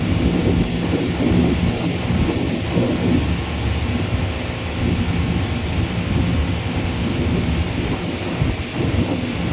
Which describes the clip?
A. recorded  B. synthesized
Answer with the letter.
A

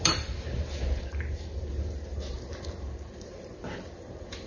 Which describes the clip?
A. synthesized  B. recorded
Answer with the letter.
A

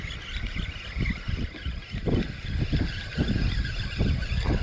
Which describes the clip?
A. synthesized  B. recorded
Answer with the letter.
B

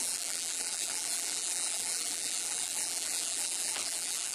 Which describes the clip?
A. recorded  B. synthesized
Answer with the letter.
B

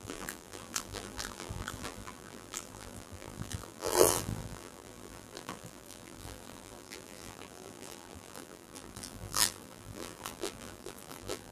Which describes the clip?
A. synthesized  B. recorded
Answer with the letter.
A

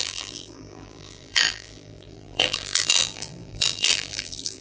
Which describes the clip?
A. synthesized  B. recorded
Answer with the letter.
A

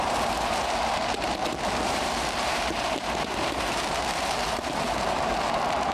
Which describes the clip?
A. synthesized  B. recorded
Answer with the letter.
A